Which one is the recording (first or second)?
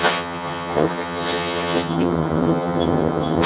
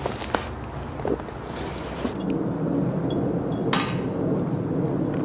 second